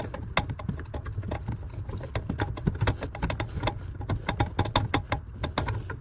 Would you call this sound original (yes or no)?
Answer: yes